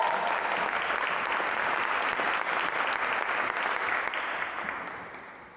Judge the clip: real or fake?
real